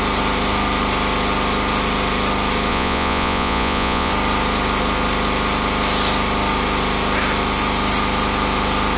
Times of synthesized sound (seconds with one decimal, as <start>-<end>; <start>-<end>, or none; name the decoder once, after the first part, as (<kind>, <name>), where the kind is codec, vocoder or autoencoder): 2.7-4.1 (vocoder, Vocos)